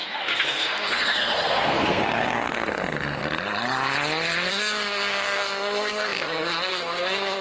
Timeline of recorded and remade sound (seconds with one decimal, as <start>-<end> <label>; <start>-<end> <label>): 0.0-3.2 remade; 3.2-4.5 recorded; 4.5-7.4 remade